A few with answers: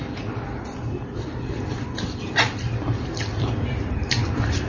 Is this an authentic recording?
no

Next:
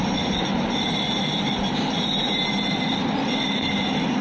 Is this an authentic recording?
yes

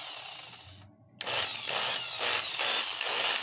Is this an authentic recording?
yes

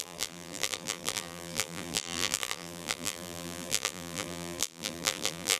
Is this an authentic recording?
no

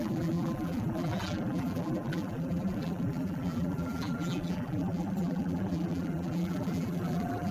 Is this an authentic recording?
no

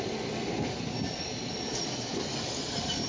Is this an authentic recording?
yes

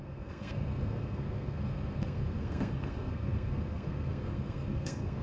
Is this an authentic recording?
no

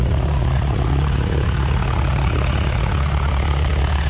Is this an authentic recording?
no